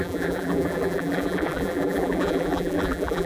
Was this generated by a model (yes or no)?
yes